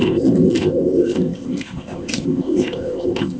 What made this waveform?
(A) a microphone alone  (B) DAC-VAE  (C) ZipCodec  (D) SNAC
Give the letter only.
C